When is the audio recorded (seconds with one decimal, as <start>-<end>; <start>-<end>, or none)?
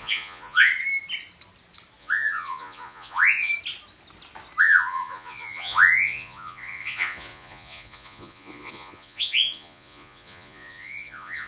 0.7-2.0; 3.5-4.6